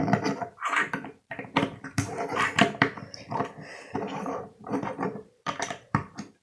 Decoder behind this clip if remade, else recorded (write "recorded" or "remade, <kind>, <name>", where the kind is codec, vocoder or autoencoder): remade, vocoder, BigVGAN v2